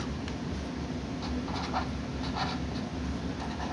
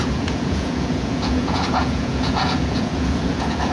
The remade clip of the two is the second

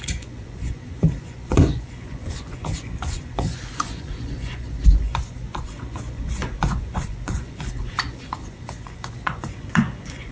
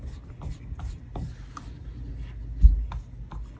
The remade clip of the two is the first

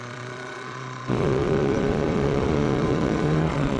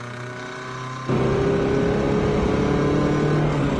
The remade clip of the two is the first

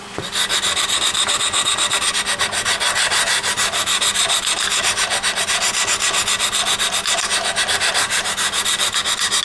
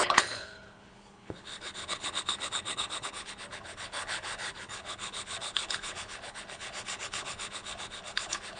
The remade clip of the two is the second